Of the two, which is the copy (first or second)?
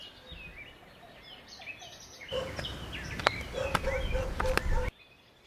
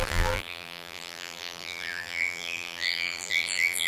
second